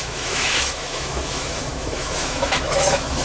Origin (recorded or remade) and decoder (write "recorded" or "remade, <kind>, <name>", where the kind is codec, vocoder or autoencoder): remade, autoencoder, DAC-VAE